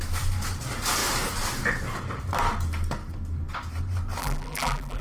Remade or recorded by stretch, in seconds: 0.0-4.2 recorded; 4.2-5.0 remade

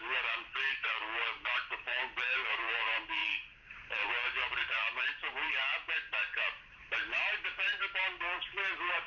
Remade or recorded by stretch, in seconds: 0.0-9.1 remade